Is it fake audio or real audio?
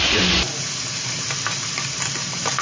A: real